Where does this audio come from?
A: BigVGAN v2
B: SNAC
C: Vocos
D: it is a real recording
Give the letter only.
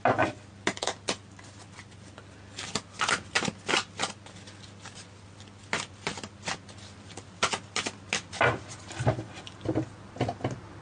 D